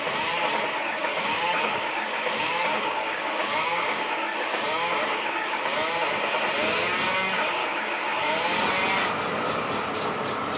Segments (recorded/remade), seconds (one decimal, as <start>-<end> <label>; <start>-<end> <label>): 0.0-1.0 recorded; 1.0-5.6 remade; 5.6-7.6 recorded; 7.6-8.2 remade; 8.2-10.6 recorded